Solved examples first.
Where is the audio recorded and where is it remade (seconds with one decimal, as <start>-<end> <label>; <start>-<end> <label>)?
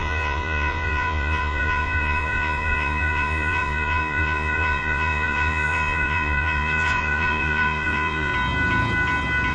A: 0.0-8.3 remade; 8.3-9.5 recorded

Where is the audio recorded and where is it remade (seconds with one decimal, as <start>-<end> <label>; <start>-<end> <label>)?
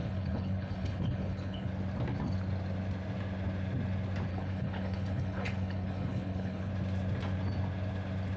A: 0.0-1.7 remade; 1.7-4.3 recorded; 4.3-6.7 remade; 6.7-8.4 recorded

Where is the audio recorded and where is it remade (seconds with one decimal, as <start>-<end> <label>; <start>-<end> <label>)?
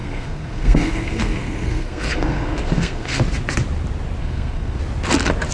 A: 0.0-3.2 remade; 3.2-4.2 recorded; 4.2-4.8 remade; 4.8-5.5 recorded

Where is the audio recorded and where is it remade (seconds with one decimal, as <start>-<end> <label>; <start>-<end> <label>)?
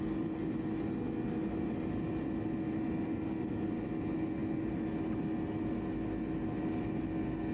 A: 0.0-7.5 recorded